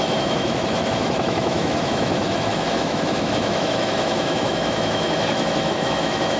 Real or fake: fake